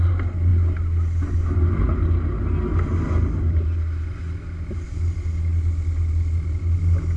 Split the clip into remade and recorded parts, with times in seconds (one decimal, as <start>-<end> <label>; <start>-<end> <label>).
0.0-7.2 recorded